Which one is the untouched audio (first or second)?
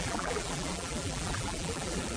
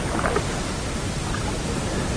second